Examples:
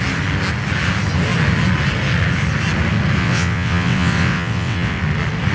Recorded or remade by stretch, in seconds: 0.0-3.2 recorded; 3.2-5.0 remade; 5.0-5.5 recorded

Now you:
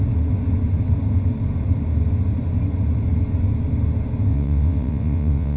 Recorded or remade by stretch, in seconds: 0.0-4.3 recorded; 4.3-5.6 remade

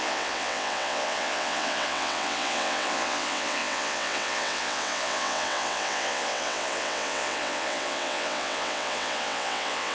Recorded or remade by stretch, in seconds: 0.0-9.9 remade

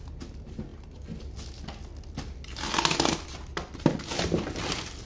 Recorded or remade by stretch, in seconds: 0.0-5.1 recorded